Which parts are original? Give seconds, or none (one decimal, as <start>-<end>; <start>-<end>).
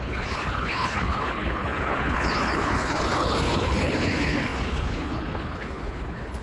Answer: none